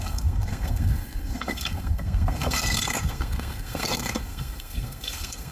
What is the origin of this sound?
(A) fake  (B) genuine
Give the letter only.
A